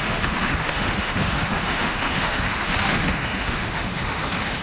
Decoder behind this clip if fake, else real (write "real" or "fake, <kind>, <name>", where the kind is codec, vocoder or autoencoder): fake, autoencoder, DAC-VAE